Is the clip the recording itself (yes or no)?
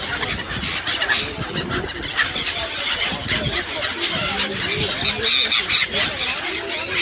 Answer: yes